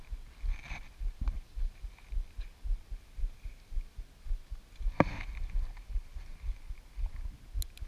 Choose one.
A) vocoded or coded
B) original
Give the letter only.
B